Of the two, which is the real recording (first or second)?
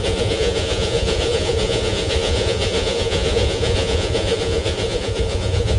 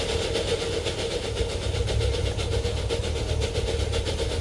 second